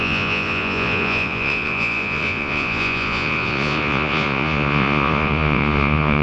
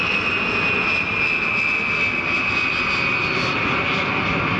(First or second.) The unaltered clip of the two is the second